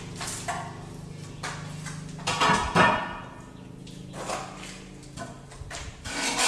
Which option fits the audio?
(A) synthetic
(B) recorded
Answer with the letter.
B